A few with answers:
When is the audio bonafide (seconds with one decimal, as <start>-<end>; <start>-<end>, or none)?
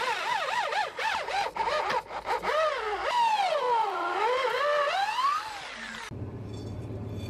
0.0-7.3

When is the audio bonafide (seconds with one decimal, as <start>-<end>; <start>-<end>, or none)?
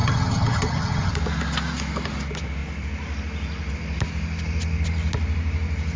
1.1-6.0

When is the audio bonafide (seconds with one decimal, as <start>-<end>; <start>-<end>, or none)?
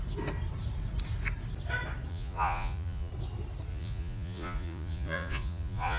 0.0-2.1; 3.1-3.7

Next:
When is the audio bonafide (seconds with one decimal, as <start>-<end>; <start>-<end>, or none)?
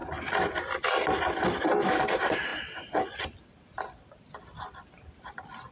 0.0-5.7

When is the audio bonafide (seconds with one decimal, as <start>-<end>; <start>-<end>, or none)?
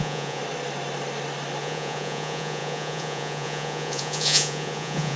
0.4-1.6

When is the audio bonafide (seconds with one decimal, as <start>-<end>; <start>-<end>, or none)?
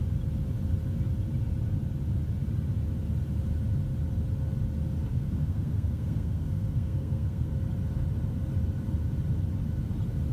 0.0-5.1; 7.5-10.3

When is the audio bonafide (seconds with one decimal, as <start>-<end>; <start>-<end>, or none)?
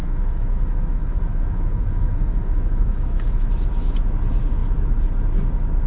3.5-5.9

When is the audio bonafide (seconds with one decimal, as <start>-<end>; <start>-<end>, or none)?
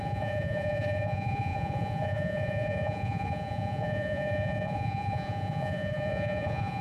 none